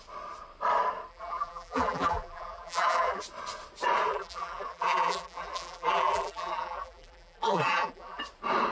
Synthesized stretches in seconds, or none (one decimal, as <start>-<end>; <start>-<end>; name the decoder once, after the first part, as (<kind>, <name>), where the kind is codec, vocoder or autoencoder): 1.1-3.2 (vocoder, BigVGAN v2); 4.1-8.2